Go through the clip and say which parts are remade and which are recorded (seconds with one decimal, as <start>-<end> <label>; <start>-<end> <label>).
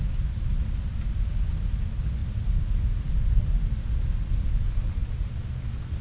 0.0-6.0 recorded